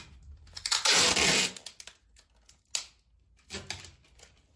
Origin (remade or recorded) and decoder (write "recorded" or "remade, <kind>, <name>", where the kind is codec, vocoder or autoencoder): recorded